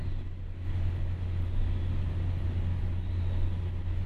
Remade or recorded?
recorded